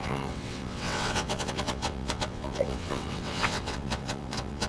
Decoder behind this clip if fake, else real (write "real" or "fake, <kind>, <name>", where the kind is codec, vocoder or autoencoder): fake, vocoder, WaveNeXt